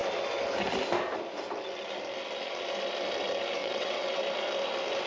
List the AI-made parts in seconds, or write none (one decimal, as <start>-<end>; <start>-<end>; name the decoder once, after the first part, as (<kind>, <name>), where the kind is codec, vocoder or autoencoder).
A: 3.6-4.2 (vocoder, WaveNeXt)